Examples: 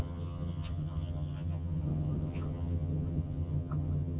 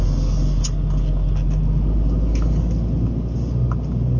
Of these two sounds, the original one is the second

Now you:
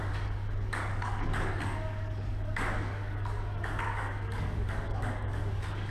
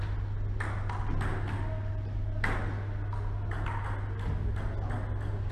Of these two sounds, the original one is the second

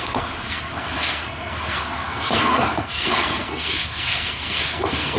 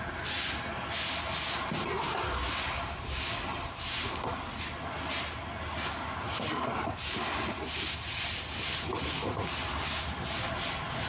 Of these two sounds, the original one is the second